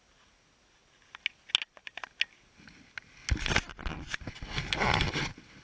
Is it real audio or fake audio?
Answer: real